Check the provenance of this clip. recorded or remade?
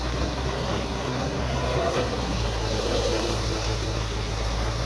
remade